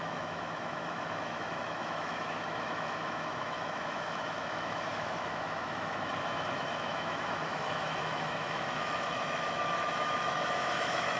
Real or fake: fake